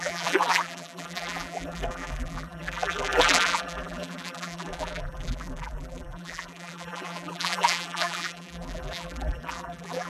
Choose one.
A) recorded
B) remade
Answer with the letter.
B